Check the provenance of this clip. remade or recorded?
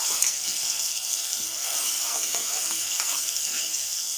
remade